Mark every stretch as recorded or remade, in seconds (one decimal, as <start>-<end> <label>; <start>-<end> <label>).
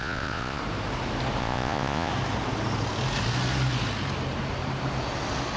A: 0.0-0.6 remade; 0.6-1.4 recorded; 1.4-2.1 remade; 2.1-5.6 recorded